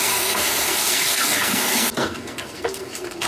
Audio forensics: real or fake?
fake